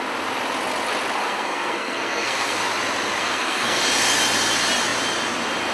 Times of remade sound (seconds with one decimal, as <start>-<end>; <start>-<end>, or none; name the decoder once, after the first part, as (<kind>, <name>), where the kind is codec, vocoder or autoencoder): 1.2-2.7 (codec, SNAC); 3.2-3.8